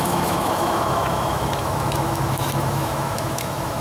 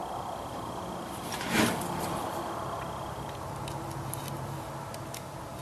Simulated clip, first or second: first